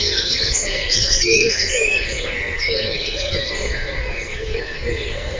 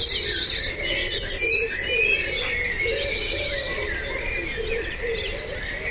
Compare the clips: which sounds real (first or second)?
second